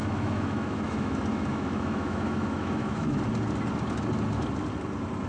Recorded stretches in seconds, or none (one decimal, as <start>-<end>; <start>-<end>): 3.2-5.3